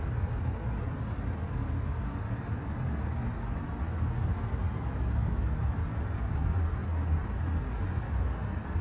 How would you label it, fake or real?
real